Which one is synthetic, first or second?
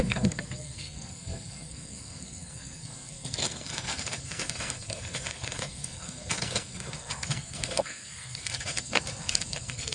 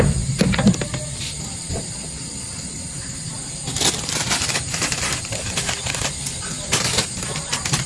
first